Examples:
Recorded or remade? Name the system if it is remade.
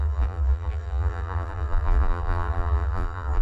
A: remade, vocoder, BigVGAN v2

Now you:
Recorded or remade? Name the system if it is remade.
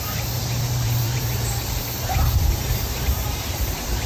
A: remade, vocoder, BigVGAN v2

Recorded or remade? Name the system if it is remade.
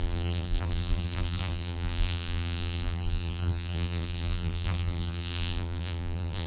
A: remade, vocoder, BigVGAN v2